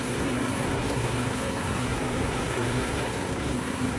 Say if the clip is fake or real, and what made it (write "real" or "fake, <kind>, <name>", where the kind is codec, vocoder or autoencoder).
fake, codec, SNAC